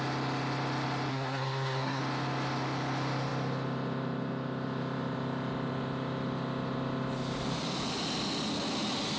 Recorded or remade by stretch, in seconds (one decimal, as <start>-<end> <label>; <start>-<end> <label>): 0.0-1.1 recorded; 1.1-2.0 remade; 2.0-9.2 recorded